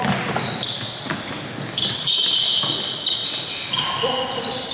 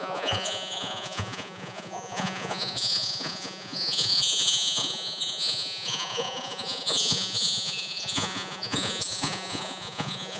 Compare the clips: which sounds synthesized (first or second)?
second